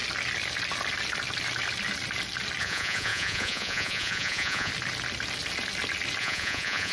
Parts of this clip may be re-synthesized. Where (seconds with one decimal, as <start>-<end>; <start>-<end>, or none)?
2.6-4.7; 6.2-6.9